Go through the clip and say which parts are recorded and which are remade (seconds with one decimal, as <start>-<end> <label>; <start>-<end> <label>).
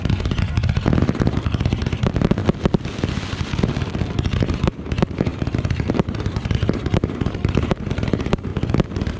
0.0-2.4 remade; 2.4-4.4 recorded; 4.4-8.5 remade; 8.5-9.2 recorded